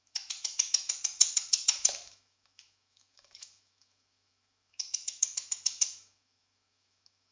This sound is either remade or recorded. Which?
remade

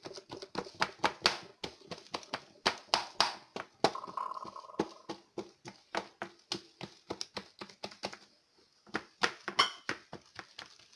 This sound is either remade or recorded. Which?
recorded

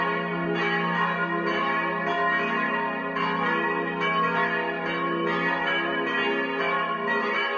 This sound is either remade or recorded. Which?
recorded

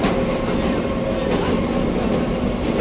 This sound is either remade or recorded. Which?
recorded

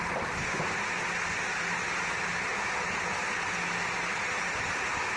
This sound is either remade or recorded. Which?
recorded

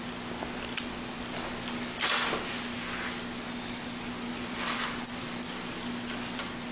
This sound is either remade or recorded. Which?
recorded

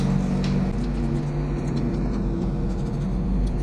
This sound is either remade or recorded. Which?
recorded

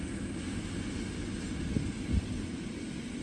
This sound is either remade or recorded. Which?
recorded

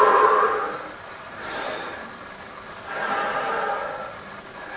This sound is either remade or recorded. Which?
recorded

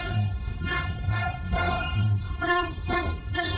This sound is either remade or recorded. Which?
remade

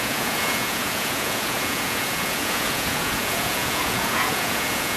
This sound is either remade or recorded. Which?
remade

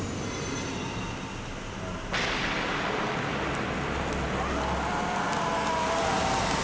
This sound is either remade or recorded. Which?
recorded